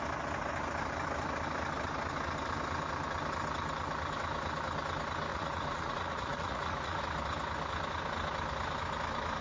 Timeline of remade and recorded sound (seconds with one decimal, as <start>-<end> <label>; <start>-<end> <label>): 0.0-5.3 recorded; 5.3-7.0 remade; 7.0-9.4 recorded